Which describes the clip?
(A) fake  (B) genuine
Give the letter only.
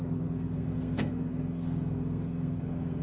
A